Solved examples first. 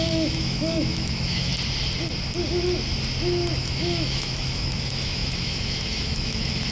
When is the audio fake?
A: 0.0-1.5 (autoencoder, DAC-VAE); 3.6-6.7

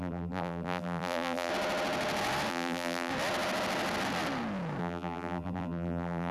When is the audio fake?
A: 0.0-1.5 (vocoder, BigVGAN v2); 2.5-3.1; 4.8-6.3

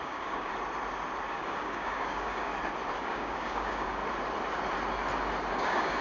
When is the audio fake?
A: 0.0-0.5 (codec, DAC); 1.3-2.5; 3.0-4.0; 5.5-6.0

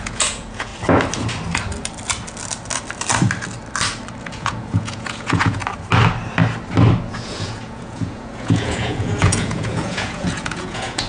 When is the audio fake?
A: 0.0-0.7 (vocoder, Vocos); 4.2-5.6; 7.1-11.1

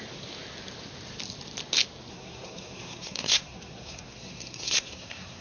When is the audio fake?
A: 2.1-5.4 (codec, SNAC)

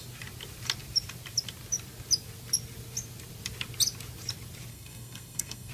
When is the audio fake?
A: 4.7-5.7 (codec, SNAC)